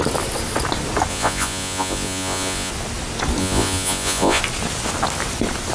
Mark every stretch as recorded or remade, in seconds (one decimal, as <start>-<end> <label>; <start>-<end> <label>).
0.0-1.1 recorded; 1.1-2.7 remade; 2.7-3.4 recorded; 3.4-4.4 remade; 4.4-5.7 recorded

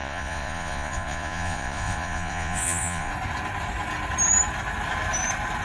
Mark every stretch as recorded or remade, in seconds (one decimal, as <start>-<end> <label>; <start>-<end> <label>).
0.0-3.1 remade; 3.1-5.6 recorded

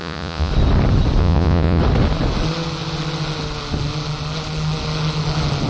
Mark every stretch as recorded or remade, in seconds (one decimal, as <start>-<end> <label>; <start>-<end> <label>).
0.0-0.5 remade; 0.5-1.2 recorded; 1.2-1.8 remade; 1.8-5.7 recorded

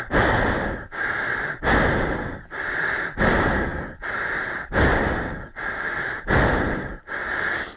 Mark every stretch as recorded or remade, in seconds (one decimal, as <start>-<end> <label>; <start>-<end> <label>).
0.0-7.8 recorded

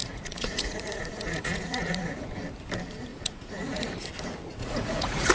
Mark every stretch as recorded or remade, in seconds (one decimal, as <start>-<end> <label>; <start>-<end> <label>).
0.0-2.3 remade; 2.3-3.1 recorded; 3.1-3.9 remade; 3.9-4.6 recorded; 4.6-5.3 remade

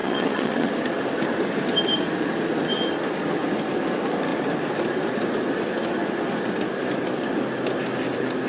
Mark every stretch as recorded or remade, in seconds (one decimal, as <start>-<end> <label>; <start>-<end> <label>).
0.0-0.7 remade; 0.7-8.5 recorded

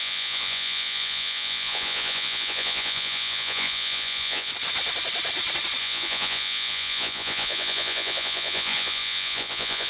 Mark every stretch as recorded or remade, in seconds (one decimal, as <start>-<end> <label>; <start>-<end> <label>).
0.0-4.5 remade; 4.5-5.8 recorded; 5.8-9.9 remade

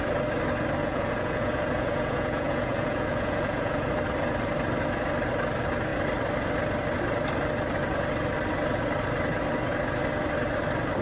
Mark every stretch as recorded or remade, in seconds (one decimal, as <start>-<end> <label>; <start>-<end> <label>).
0.0-0.8 recorded; 0.8-3.9 remade; 3.9-11.0 recorded